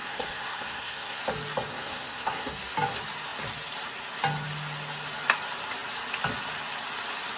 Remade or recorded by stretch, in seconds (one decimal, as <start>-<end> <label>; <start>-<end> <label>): 0.0-1.2 remade; 1.2-1.7 recorded; 1.7-2.5 remade; 2.5-7.4 recorded